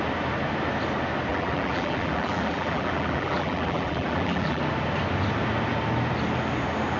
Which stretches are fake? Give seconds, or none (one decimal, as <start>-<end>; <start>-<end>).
1.3-4.6